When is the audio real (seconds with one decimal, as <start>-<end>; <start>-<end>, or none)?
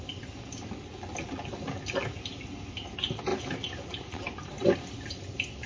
0.0-5.7